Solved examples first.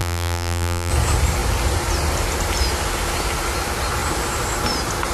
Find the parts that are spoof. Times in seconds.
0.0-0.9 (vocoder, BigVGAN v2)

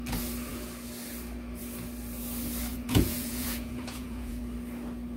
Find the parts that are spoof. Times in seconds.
2.7-4.4 (vocoder, Vocos)

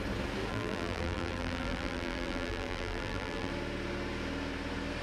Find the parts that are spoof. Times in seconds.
0.5-3.5 (vocoder, BigVGAN v2)

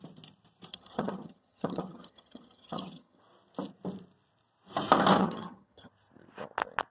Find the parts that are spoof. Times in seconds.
0.7-3.2 (vocoder, HiFi-GAN); 5.2-5.9

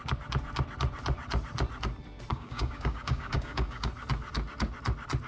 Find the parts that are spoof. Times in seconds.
2.3-3.9 (codec, DAC)